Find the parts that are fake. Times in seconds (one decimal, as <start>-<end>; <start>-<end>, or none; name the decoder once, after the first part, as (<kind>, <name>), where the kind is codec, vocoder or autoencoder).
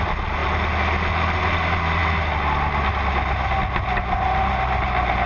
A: none